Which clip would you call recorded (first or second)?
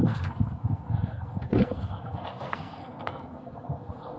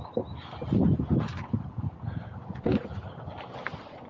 second